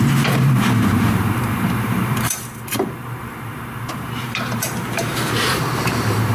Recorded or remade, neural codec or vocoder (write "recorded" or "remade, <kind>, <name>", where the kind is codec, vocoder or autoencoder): remade, vocoder, BigVGAN v2